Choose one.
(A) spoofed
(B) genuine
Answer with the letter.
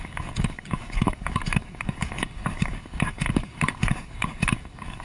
A